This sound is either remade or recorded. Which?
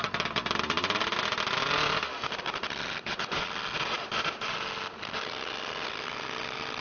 recorded